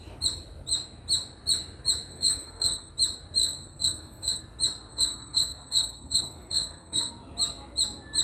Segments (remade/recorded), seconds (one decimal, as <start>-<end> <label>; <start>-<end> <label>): 0.0-2.1 recorded; 2.1-2.9 remade; 2.9-3.4 recorded; 3.4-4.4 remade; 4.4-4.9 recorded; 4.9-7.1 remade; 7.1-8.2 recorded